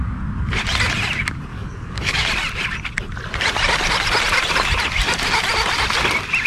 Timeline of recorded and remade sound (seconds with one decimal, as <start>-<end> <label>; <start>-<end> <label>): 0.0-1.5 recorded; 1.5-2.3 remade; 2.3-6.5 recorded